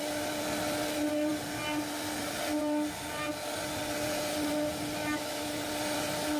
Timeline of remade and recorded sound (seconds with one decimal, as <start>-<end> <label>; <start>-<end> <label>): 0.0-5.0 recorded; 5.0-5.6 remade; 5.6-6.4 recorded